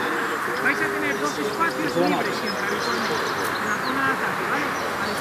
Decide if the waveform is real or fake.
real